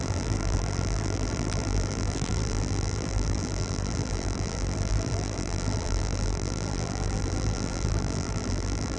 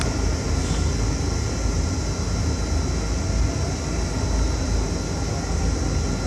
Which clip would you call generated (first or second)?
first